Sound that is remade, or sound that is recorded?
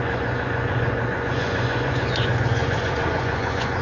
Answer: remade